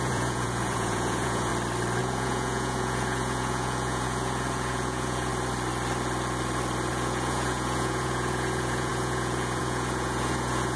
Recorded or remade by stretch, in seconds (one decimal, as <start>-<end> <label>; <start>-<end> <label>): 0.0-1.5 remade; 1.5-2.0 recorded; 2.0-5.3 remade; 5.3-6.9 recorded; 6.9-10.8 remade